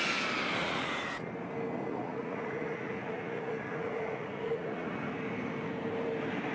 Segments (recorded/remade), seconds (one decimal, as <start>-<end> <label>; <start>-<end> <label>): 0.0-0.6 recorded; 0.6-1.3 remade; 1.3-1.9 recorded; 1.9-5.1 remade; 5.1-6.5 recorded